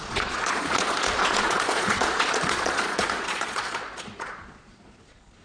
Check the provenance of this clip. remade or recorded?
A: remade